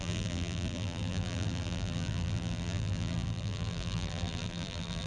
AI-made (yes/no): yes